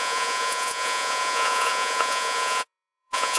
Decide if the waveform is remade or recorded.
remade